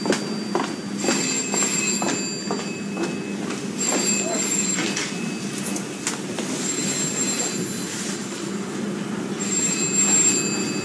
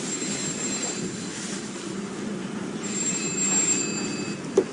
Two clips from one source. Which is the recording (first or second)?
first